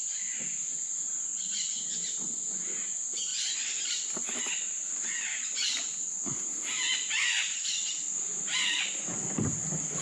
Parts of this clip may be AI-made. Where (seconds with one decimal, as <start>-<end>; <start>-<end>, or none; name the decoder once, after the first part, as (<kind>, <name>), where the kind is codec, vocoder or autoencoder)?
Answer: none